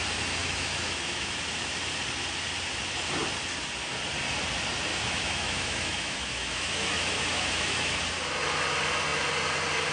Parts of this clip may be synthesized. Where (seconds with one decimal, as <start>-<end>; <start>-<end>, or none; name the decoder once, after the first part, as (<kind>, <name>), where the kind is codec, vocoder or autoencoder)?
0.4-1.3 (autoencoder, DAC-VAE); 4.9-8.0